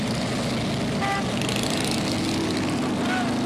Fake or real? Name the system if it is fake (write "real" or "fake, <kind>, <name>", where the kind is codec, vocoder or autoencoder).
real